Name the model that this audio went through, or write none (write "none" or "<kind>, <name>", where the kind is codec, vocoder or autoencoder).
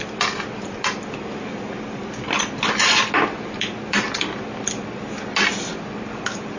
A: none